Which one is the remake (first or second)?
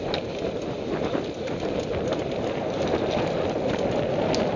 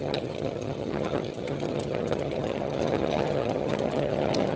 second